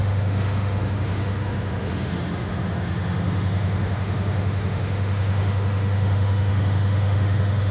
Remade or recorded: remade